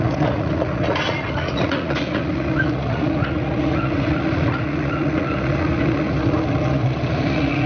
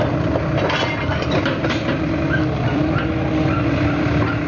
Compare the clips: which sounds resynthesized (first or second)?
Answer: first